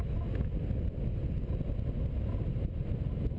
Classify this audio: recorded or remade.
recorded